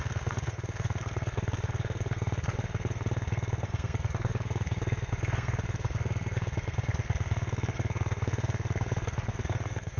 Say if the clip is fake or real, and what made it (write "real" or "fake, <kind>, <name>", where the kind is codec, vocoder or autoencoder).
fake, codec, SNAC